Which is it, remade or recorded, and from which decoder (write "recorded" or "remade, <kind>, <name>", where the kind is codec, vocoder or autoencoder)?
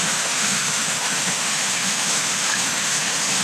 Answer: remade, autoencoder, DAC-VAE